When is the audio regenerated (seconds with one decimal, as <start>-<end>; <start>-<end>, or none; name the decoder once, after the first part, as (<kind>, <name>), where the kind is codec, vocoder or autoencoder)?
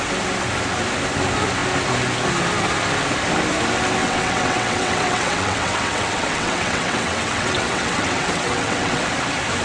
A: 4.0-9.0 (vocoder, WaveNeXt)